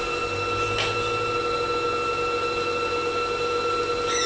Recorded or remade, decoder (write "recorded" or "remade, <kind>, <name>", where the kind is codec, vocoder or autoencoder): recorded